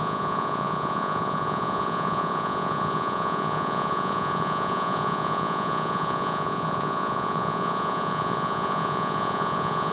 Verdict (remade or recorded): remade